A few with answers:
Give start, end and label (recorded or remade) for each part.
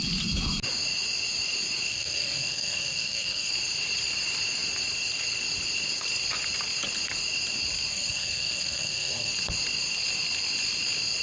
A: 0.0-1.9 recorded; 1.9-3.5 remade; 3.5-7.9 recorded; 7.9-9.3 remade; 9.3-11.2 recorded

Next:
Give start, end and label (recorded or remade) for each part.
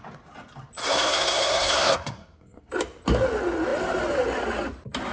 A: 0.0-0.8 recorded; 0.8-2.7 remade; 2.7-5.1 recorded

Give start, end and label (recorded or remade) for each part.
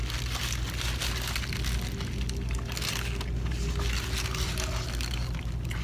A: 0.0-5.8 recorded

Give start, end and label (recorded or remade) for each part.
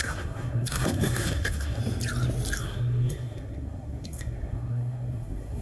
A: 0.0-1.8 remade; 1.8-2.6 recorded; 2.6-5.6 remade